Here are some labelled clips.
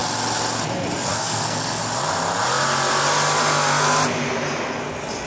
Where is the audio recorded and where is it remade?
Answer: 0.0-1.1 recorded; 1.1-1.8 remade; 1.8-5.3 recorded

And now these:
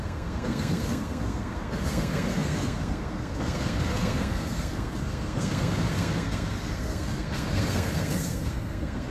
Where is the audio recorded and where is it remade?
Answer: 0.0-9.1 remade